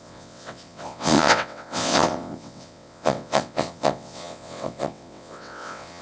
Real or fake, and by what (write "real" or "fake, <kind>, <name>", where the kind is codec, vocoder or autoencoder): fake, vocoder, WaveNeXt